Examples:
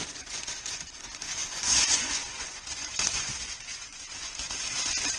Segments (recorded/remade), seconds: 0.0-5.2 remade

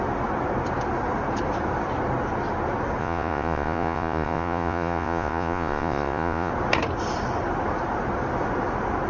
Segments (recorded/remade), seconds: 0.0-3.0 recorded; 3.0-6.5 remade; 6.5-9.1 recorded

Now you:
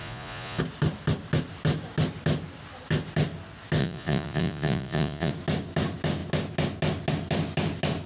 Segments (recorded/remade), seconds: 0.0-0.6 remade; 0.6-3.8 recorded; 3.8-5.3 remade; 5.3-8.1 recorded

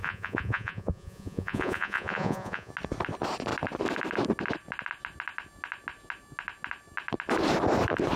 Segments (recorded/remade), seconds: 0.0-2.7 remade; 2.7-8.2 recorded

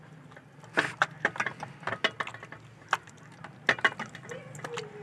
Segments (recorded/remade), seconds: 0.0-5.0 recorded

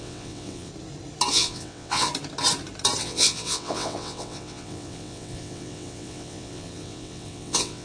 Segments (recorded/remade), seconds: 0.0-0.7 remade; 0.7-1.3 recorded; 1.3-2.1 remade; 2.1-3.0 recorded; 3.0-7.8 remade